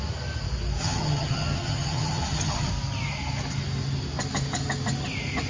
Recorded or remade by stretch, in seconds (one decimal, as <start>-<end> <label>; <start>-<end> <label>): 0.0-0.8 recorded; 0.8-2.7 remade; 2.7-5.5 recorded